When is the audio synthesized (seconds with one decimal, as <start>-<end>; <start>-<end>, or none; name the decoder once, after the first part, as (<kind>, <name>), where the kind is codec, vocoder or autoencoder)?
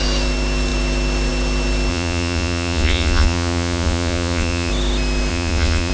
1.9-4.7 (vocoder, Vocos); 5.3-5.9